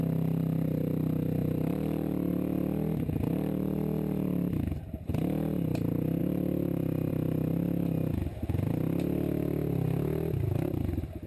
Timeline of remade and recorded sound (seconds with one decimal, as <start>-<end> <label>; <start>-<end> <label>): 0.0-1.4 recorded; 1.4-2.3 remade; 2.3-6.2 recorded; 6.2-7.1 remade; 7.1-11.3 recorded